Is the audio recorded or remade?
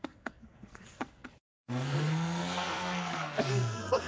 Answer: remade